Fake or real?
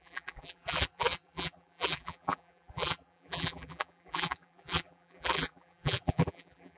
fake